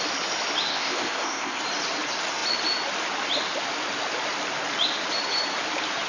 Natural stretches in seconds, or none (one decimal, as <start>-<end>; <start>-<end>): 0.0-0.7; 1.6-6.1